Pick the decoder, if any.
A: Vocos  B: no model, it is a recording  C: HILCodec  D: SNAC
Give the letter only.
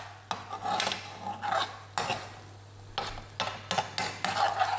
B